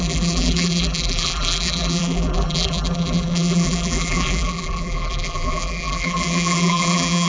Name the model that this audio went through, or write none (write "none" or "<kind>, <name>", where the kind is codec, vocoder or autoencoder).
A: vocoder, BigVGAN v2